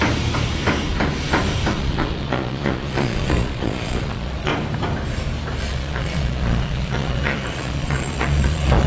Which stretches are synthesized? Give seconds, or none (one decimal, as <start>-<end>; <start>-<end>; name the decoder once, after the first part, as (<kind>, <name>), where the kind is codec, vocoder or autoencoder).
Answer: 1.7-4.5 (vocoder, Vocos); 5.6-8.9